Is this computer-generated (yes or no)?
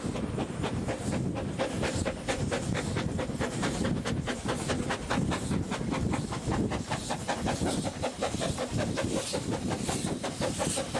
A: no